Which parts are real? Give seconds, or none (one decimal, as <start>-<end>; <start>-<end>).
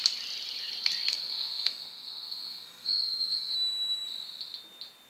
0.0-1.1; 3.5-5.1